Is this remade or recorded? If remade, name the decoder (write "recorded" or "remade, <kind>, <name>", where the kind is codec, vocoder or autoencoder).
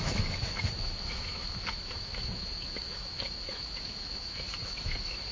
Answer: remade, autoencoder, DAC-VAE